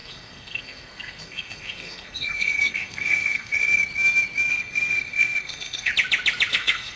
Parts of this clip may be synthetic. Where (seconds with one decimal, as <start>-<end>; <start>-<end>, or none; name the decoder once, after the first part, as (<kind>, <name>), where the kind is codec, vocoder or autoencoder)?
0.0-3.8 (codec, SNAC); 4.5-5.9; 6.5-7.0